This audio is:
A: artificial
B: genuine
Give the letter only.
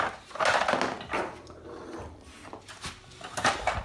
B